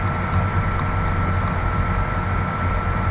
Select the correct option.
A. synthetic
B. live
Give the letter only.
B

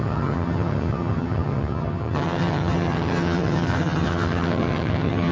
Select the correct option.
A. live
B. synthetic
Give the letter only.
B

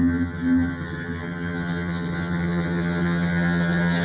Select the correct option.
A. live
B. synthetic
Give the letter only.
B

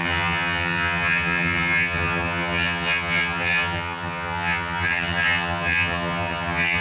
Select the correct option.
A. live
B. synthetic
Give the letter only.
B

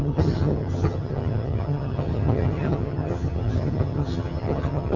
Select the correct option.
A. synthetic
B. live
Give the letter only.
A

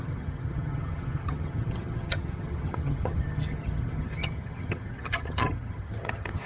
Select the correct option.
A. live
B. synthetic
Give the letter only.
B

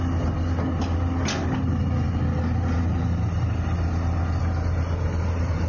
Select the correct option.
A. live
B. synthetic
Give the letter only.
A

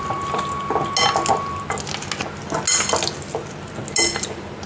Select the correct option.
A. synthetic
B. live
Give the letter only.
B